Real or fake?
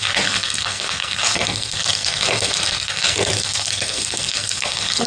fake